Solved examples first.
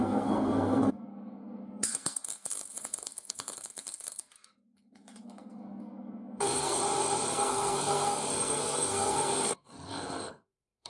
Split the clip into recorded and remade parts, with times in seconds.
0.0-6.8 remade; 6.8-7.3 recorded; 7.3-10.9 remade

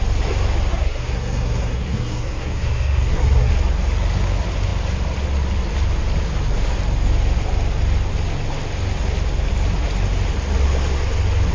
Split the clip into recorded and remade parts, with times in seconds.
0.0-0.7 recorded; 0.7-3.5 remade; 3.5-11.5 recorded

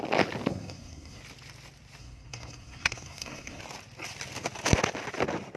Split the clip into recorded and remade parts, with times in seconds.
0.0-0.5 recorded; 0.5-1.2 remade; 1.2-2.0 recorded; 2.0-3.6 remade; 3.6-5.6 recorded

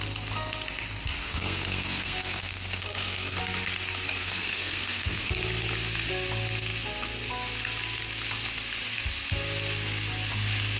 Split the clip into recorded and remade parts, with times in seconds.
0.0-1.2 recorded; 1.2-3.4 remade; 3.4-4.2 recorded; 4.2-5.3 remade; 5.3-10.8 recorded

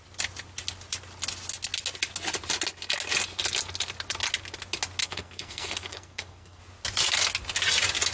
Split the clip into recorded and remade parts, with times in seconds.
0.0-5.0 recorded; 5.0-6.6 remade; 6.6-8.1 recorded

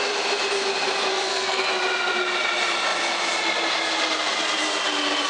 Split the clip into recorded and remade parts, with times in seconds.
0.0-1.1 recorded; 1.1-1.7 remade; 1.7-5.3 recorded